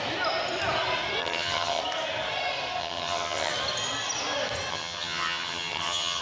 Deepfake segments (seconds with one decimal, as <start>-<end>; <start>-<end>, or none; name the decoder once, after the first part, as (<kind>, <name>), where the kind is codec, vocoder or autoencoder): 1.2-1.8 (vocoder, HiFi-GAN); 2.8-3.5; 4.7-6.2